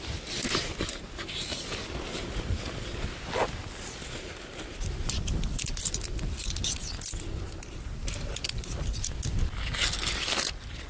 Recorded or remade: recorded